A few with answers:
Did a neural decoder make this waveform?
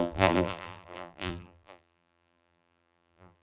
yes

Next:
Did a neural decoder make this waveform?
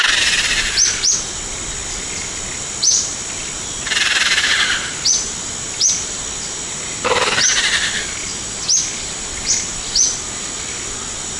no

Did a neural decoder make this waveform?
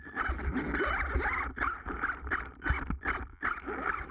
yes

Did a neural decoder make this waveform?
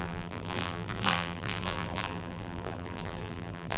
yes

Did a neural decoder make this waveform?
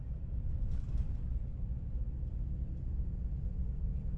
no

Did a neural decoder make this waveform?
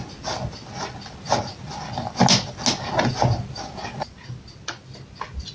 no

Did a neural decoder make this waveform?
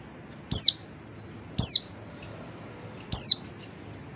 no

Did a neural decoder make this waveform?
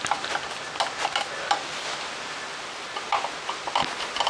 no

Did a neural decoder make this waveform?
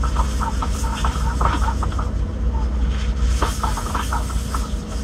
no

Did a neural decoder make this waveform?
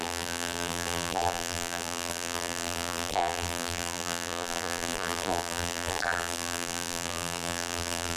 yes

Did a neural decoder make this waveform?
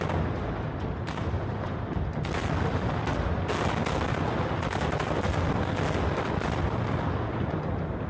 no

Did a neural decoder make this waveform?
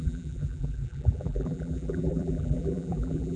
yes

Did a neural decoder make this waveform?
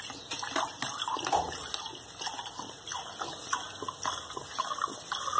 no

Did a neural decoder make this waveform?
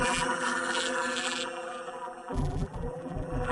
yes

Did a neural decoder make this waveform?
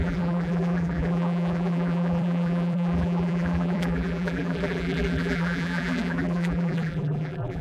yes